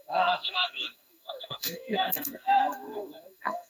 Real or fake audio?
fake